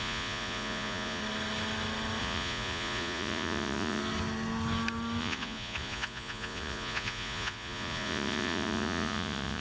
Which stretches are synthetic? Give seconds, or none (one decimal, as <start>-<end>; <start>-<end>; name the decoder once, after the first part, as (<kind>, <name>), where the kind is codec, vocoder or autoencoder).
0.0-1.2 (vocoder, Vocos); 2.2-4.0; 5.2-9.6